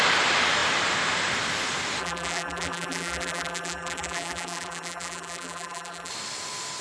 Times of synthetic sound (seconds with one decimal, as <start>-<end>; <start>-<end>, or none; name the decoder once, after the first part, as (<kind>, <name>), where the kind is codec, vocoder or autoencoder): 2.0-6.1 (vocoder, BigVGAN v2)